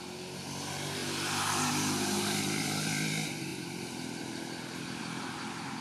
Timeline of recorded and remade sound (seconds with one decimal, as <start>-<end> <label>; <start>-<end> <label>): 0.0-5.8 remade